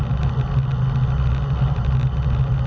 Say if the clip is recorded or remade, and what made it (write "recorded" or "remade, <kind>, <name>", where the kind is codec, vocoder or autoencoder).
recorded